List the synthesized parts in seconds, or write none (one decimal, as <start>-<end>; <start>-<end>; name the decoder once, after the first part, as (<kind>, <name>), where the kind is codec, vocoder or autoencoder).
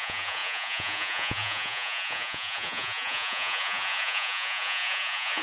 0.0-5.4 (vocoder, Vocos)